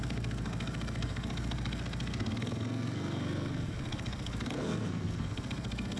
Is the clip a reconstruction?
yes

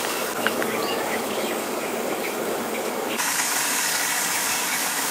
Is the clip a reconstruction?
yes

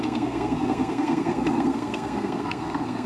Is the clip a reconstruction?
yes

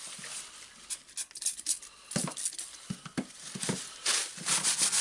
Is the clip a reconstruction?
no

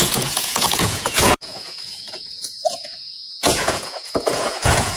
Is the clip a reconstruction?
yes